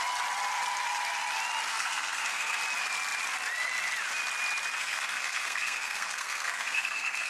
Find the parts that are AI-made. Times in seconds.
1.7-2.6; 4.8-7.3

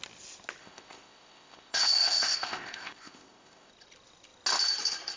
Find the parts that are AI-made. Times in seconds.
0.6-3.7

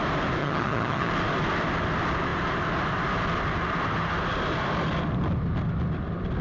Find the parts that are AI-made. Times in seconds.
0.4-1.1